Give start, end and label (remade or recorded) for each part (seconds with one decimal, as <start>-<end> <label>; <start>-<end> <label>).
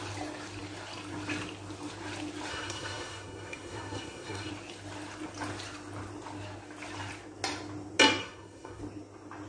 0.0-2.5 recorded; 2.5-4.5 remade; 4.5-8.2 recorded; 8.2-8.8 remade; 8.8-9.5 recorded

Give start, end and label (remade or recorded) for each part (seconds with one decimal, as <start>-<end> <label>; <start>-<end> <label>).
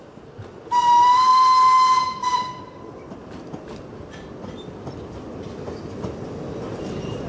0.0-7.3 recorded